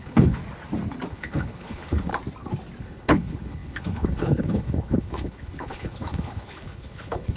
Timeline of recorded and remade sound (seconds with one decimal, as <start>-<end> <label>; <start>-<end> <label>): 0.0-0.4 remade; 0.4-1.1 recorded; 1.1-2.1 remade; 2.1-2.8 recorded; 2.8-7.4 remade